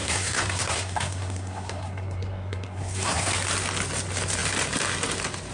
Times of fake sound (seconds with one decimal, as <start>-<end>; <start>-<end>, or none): 0.0-3.3